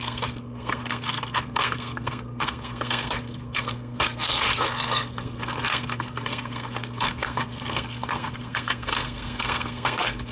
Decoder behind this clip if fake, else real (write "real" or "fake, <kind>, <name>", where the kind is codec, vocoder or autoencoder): fake, codec, SNAC